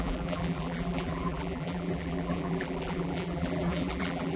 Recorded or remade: remade